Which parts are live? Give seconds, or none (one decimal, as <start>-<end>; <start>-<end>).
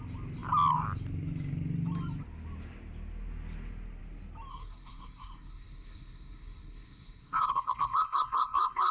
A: 0.0-4.5